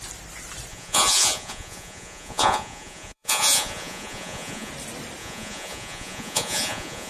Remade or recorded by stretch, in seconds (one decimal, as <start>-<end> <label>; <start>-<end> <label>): 0.0-0.7 recorded; 0.7-4.7 remade; 4.7-5.2 recorded; 5.2-7.1 remade